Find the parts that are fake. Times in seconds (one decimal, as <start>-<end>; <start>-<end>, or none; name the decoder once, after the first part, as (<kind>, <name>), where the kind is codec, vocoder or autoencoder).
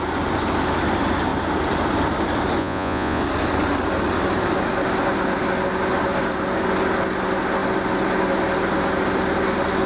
2.6-3.2 (vocoder, Vocos)